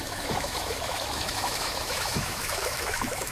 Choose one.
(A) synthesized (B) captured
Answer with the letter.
A